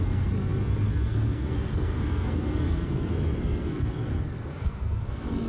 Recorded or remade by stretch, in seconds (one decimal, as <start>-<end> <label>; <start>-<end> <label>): 0.0-5.5 remade